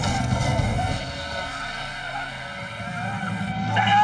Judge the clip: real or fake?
fake